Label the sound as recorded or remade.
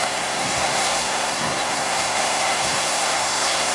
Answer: remade